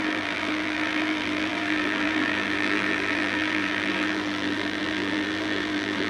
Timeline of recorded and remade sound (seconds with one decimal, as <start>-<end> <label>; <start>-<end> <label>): 0.0-6.1 remade